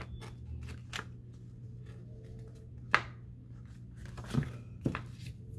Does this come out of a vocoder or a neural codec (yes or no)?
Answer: no